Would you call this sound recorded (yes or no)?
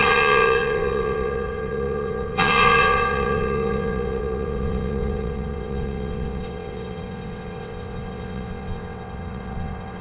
no